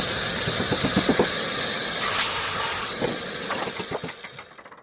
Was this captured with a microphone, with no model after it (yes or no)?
yes